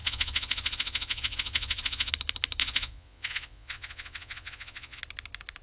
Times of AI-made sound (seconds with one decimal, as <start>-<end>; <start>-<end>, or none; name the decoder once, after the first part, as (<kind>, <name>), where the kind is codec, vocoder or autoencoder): 0.0-2.1 (vocoder, Vocos); 2.6-5.0